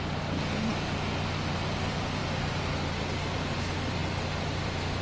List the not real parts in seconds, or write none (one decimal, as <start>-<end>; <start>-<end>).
none